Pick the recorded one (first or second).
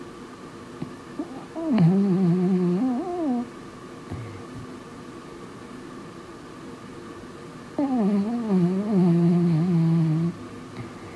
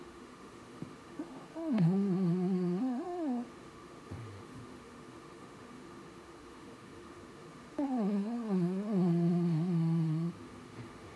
first